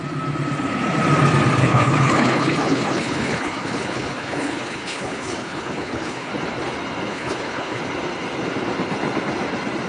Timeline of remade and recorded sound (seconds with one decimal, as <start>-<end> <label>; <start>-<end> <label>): 0.0-1.6 recorded; 1.6-6.3 remade; 6.3-7.1 recorded; 7.1-7.8 remade; 7.8-9.9 recorded